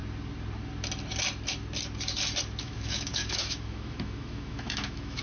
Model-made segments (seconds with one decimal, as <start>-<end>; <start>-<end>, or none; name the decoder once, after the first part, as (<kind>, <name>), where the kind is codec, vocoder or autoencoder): 2.6-5.2 (autoencoder, DAC-VAE)